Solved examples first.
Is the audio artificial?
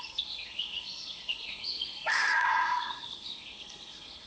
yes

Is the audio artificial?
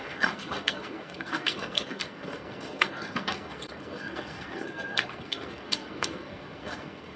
yes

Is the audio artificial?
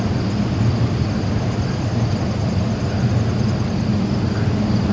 no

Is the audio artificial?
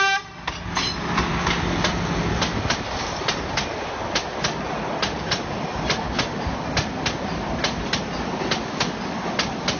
no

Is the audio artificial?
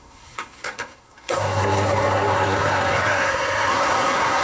yes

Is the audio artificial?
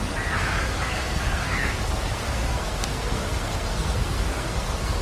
yes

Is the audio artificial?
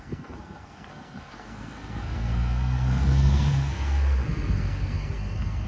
yes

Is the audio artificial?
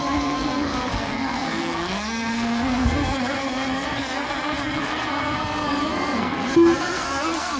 yes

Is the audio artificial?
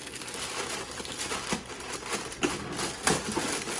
no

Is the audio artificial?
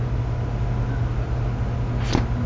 no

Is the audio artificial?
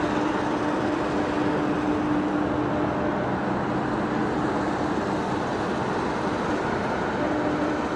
no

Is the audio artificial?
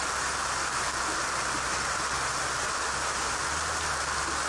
no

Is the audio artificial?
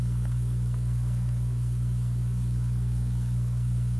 yes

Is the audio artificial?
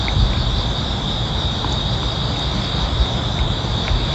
no